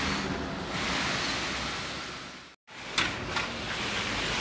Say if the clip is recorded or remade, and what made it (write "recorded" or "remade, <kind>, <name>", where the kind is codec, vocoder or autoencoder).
recorded